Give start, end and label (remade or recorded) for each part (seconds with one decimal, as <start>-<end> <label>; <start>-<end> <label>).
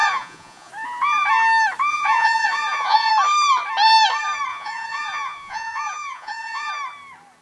0.0-0.7 remade; 0.7-1.9 recorded; 1.9-3.1 remade; 3.1-4.5 recorded; 4.5-6.7 remade; 6.7-7.4 recorded